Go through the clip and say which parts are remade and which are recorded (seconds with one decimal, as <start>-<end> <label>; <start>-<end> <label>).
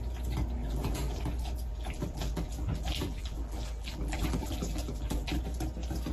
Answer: 0.0-0.6 recorded; 0.6-1.2 remade; 1.2-1.7 recorded; 1.7-5.4 remade; 5.4-6.1 recorded